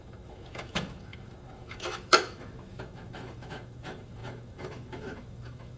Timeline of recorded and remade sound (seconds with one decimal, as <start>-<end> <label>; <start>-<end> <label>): 0.0-5.8 remade